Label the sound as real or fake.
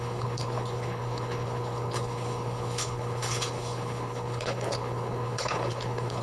fake